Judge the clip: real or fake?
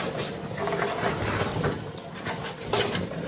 real